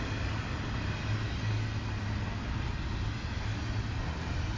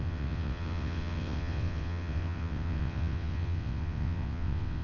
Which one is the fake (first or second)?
second